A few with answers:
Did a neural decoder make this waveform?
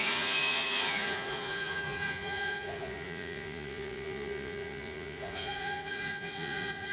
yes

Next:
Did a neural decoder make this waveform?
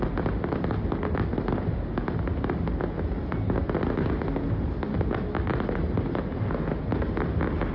no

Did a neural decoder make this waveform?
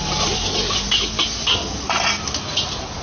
no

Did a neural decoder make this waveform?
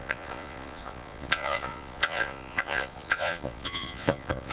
yes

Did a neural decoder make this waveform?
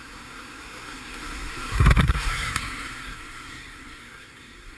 yes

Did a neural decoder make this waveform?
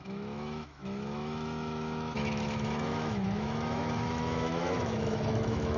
yes